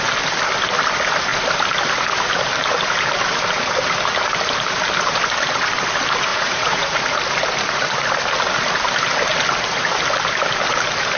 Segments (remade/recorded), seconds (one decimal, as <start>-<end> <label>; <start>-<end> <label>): 0.0-6.3 recorded; 6.3-7.0 remade; 7.0-11.2 recorded